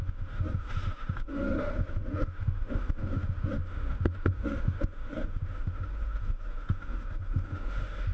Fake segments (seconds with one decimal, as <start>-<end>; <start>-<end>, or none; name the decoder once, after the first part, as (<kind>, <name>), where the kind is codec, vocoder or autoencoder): 0.0-8.1 (autoencoder, DAC-VAE)